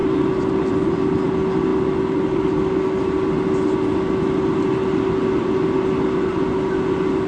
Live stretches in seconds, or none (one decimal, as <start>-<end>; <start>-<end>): 0.0-7.3

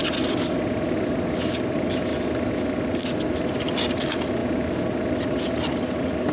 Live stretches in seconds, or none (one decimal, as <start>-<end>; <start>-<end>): 0.0-6.3

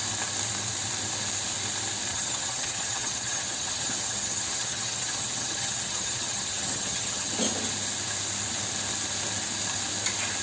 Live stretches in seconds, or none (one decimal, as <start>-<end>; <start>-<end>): 0.0-2.1; 7.3-10.4

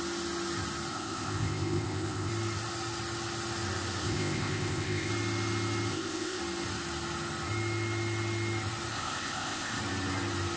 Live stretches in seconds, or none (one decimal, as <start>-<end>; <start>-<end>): 0.0-0.9; 2.3-4.0; 5.1-5.9; 6.4-8.9; 9.8-10.6

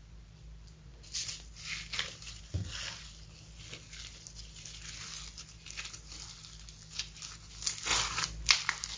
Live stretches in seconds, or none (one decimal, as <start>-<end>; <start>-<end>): 0.0-9.0

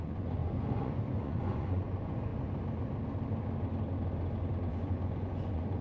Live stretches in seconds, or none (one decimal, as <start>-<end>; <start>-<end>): 2.3-4.7